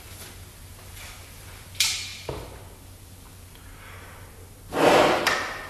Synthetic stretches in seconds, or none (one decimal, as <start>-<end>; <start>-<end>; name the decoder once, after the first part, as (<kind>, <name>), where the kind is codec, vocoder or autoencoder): 0.0-0.7 (vocoder, BigVGAN v2); 1.3-2.1; 5.2-5.7